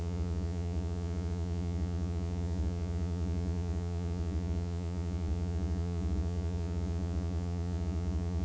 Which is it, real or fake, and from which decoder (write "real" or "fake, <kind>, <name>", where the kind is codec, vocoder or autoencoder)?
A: fake, vocoder, Vocos